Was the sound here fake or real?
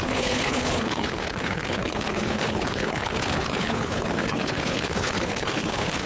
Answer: fake